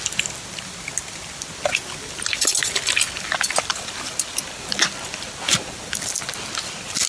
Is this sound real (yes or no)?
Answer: yes